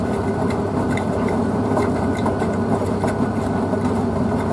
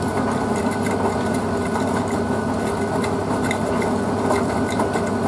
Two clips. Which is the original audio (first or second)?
second